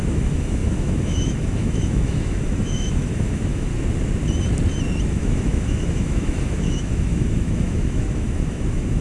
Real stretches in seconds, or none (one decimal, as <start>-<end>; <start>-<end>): 3.7-5.1